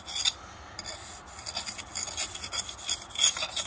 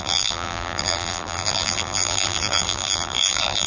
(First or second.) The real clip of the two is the first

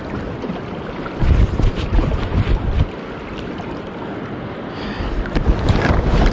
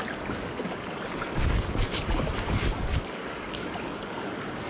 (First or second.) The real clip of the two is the first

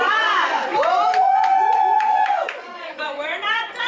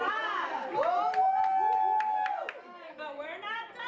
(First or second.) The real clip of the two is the second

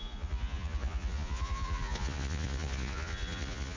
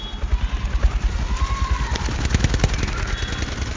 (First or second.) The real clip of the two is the second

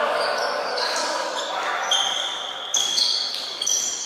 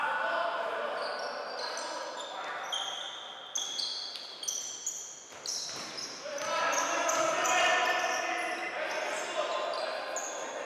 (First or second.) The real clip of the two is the second